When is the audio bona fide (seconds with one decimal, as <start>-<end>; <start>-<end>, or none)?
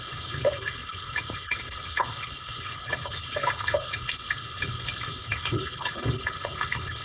none